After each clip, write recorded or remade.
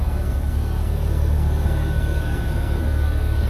remade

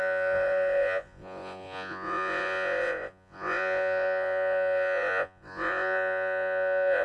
remade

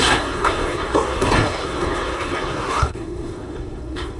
remade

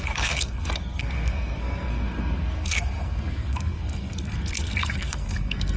remade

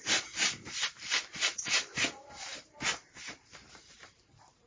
remade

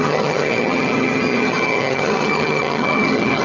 remade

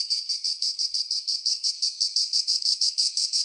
remade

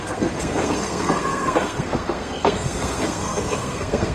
remade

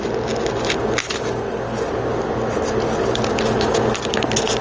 recorded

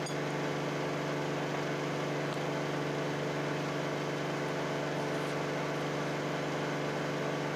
recorded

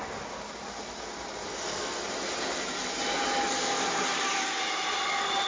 recorded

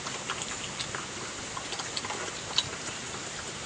recorded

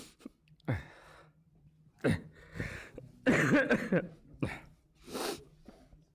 recorded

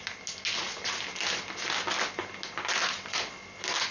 recorded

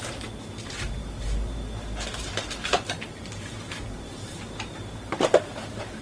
remade